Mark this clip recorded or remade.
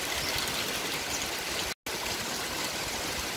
recorded